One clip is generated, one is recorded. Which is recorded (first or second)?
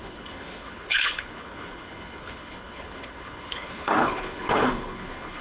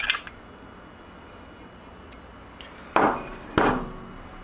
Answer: second